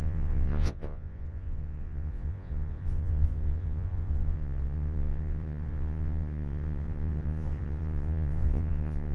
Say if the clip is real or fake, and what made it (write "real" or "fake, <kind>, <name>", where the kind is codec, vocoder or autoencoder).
fake, vocoder, Vocos